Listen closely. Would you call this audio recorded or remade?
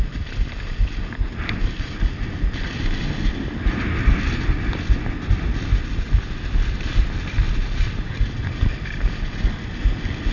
recorded